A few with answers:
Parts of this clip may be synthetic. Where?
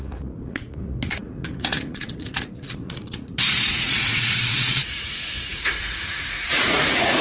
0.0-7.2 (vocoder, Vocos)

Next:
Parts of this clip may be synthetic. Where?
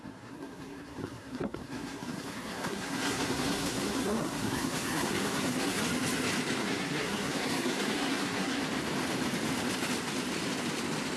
0.0-5.8 (codec, SNAC); 6.6-8.6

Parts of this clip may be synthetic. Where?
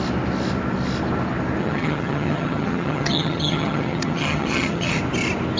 1.6-5.0 (vocoder, HiFi-GAN)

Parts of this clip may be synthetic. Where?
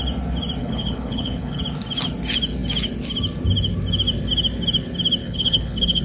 0.6-1.6 (codec, HILCodec); 5.2-6.0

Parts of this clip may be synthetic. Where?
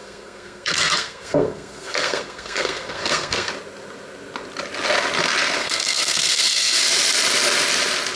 0.0-3.5 (codec, SNAC); 5.6-6.8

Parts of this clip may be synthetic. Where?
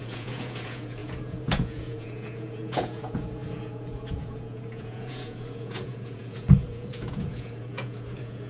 0.0-8.5 (vocoder, Vocos)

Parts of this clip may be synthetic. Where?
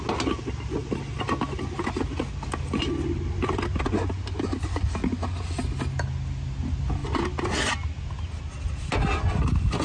none